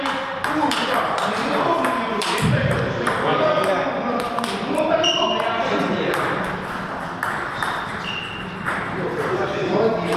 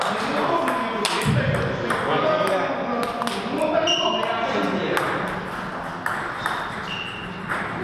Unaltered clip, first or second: second